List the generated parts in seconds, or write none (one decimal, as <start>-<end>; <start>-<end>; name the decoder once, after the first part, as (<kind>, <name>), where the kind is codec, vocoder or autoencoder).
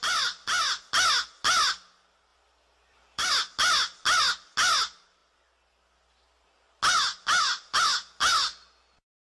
0.0-0.7 (vocoder, BigVGAN v2); 2.3-3.3